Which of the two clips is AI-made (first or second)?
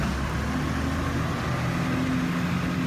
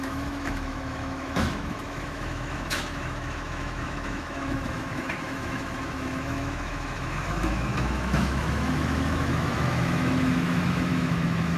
second